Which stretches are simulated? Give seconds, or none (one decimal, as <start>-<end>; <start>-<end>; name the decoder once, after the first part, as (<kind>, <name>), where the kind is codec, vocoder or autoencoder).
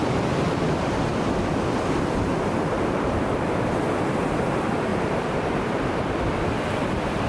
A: 2.2-3.4 (vocoder, BigVGAN v2); 4.9-5.9